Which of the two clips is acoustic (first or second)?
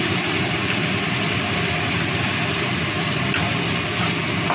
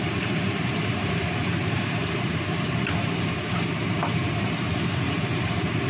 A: first